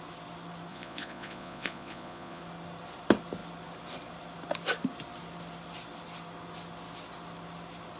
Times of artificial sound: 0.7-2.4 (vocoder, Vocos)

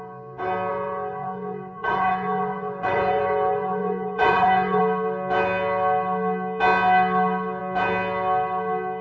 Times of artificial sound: 0.7-4.8 (vocoder, Vocos)